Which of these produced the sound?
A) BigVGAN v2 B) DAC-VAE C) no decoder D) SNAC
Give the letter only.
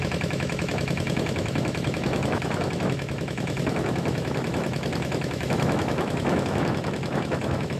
B